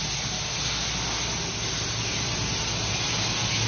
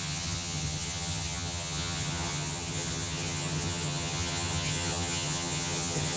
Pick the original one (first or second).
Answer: first